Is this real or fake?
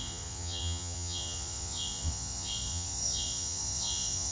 fake